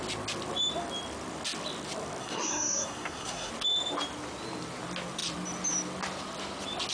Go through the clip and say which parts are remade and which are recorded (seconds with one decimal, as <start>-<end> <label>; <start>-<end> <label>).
0.0-2.2 recorded; 2.2-3.5 remade; 3.5-6.9 recorded